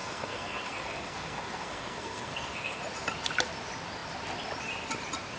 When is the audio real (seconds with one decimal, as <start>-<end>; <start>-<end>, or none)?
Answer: 2.8-5.4

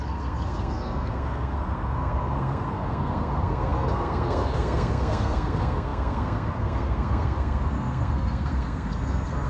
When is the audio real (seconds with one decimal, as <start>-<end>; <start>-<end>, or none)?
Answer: none

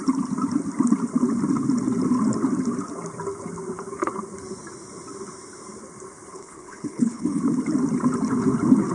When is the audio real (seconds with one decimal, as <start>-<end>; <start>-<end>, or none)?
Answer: 0.0-6.3; 7.4-8.9

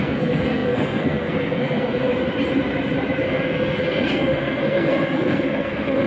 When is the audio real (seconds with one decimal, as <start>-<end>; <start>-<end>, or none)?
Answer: 2.1-3.2

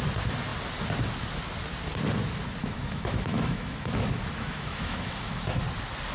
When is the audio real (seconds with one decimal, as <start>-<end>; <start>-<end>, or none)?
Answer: 0.0-2.6; 5.6-6.1

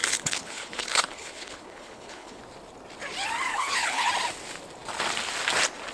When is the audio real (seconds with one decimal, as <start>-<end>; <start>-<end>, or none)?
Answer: 2.4-3.5; 4.1-5.9